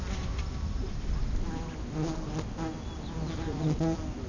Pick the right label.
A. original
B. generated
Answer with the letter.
A